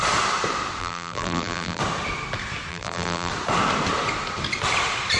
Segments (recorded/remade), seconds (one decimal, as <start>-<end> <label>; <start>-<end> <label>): 0.0-0.8 recorded; 0.8-1.8 remade; 1.8-2.7 recorded; 2.7-3.3 remade; 3.3-5.2 recorded

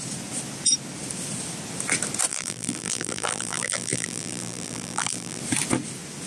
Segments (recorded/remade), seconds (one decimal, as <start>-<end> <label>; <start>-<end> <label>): 0.0-2.3 recorded; 2.3-5.4 remade; 5.4-6.3 recorded